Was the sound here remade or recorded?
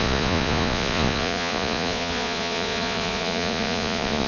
remade